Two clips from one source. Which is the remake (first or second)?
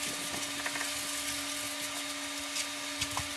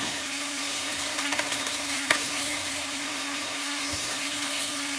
second